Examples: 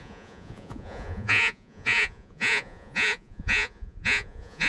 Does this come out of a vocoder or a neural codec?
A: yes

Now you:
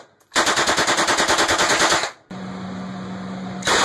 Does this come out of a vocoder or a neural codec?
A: no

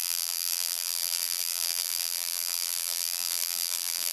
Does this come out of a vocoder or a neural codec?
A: yes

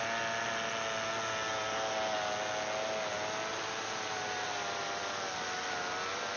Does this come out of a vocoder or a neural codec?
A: no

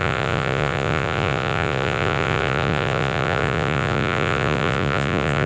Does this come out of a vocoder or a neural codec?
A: yes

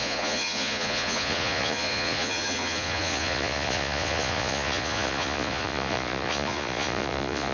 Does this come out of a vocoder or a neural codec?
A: yes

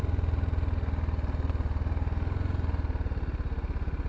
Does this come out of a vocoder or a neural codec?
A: no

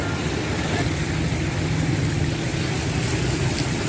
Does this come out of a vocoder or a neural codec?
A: no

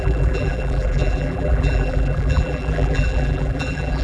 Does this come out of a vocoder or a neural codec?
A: yes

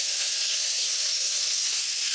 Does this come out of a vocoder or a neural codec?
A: yes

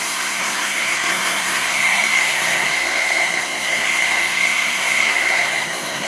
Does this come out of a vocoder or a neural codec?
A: yes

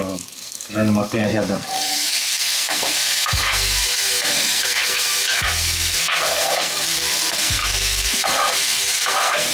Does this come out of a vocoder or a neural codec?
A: yes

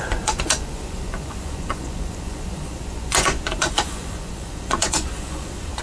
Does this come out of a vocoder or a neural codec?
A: yes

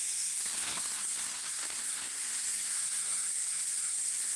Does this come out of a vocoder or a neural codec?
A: yes